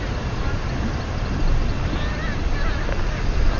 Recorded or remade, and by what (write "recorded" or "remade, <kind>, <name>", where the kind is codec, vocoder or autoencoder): recorded